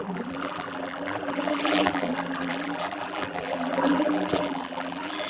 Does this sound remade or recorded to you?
remade